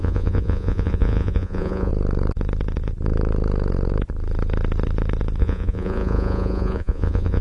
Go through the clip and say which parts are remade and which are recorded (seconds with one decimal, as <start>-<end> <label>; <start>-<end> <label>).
0.0-1.9 remade; 1.9-5.4 recorded; 5.4-7.4 remade